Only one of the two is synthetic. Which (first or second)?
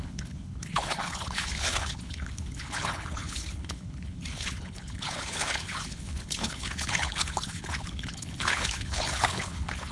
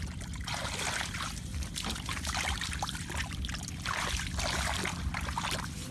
first